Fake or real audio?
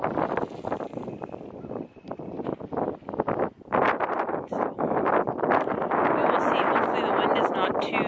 real